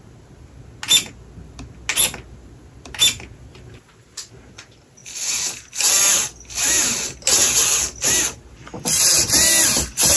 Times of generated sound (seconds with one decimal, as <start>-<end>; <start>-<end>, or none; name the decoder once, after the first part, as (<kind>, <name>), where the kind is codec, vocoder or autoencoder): none